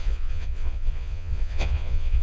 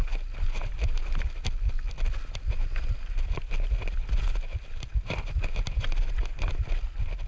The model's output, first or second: first